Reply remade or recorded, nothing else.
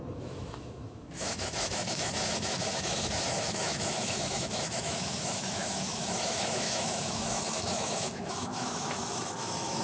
remade